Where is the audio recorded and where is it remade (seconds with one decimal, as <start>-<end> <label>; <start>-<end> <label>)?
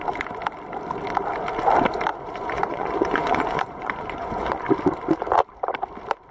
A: 0.0-2.1 recorded; 2.1-4.6 remade; 4.6-6.3 recorded